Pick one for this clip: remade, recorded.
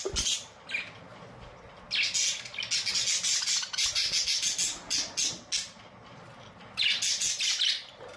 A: recorded